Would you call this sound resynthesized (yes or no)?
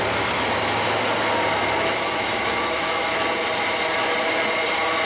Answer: no